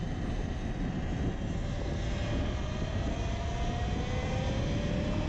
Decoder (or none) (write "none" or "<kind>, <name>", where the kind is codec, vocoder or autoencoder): none